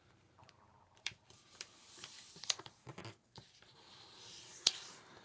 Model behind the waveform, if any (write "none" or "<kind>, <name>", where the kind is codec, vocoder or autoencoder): vocoder, BigVGAN v2